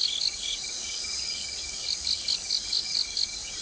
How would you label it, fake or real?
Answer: fake